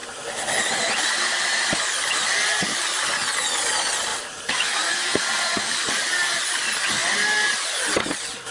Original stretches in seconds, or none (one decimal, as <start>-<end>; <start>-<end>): 0.0-4.1; 6.4-8.5